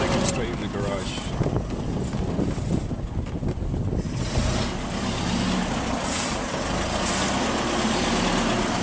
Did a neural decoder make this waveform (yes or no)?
no